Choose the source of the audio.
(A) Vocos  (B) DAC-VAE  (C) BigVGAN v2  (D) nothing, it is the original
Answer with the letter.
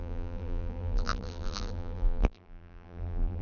C